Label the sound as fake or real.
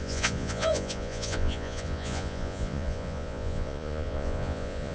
fake